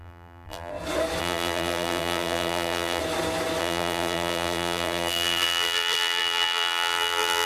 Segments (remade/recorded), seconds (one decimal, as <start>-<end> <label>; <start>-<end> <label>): 0.0-0.7 remade; 0.7-1.2 recorded; 1.2-3.0 remade; 3.0-3.6 recorded; 3.6-7.5 remade